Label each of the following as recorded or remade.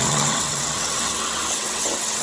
remade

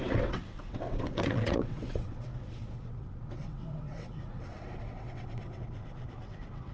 remade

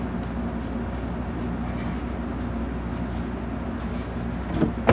recorded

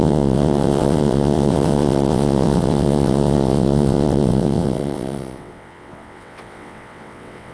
remade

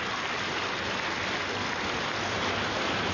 recorded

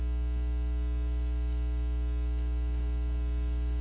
recorded